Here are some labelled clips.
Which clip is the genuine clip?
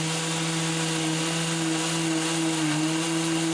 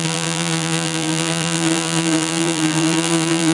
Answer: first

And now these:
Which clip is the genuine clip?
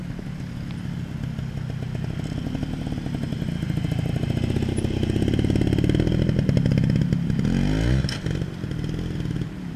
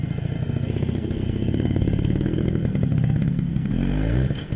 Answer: first